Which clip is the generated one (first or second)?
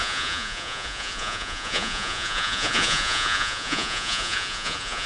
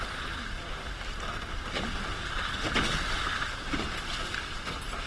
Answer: first